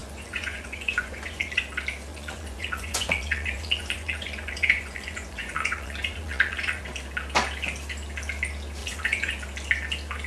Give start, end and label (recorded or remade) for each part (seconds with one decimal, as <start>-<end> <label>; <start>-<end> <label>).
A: 0.0-1.6 remade; 1.6-2.1 recorded; 2.1-6.8 remade; 6.8-8.8 recorded; 8.8-9.3 remade; 9.3-10.3 recorded

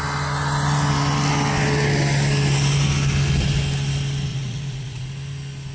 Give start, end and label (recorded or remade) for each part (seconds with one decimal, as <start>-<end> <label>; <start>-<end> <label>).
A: 0.0-4.3 recorded; 4.3-5.1 remade; 5.1-5.7 recorded

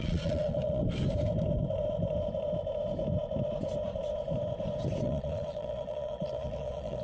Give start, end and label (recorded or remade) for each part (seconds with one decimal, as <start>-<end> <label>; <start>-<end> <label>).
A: 0.0-0.8 remade; 0.8-5.0 recorded; 5.0-7.0 remade